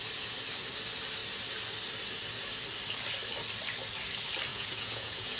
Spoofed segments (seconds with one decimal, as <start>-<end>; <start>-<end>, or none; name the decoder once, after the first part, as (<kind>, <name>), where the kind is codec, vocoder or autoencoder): 4.5-5.4 (vocoder, Vocos)